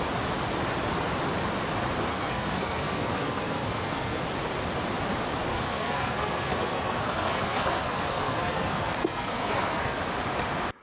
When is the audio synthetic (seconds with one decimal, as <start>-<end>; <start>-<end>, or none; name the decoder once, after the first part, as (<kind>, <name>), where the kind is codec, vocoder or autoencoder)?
2.1-4.2 (codec, SNAC); 5.5-10.0